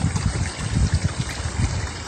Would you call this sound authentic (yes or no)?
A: yes